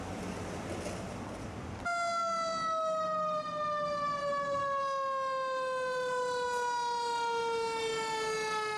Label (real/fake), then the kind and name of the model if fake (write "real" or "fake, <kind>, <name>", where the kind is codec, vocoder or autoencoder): real